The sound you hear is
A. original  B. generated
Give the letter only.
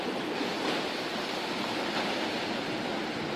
A